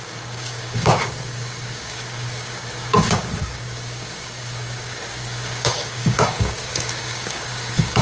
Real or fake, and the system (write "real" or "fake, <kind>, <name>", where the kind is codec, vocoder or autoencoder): fake, codec, DAC